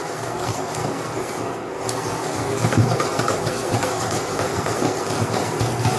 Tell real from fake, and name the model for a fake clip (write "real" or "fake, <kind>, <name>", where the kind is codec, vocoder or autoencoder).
fake, codec, SNAC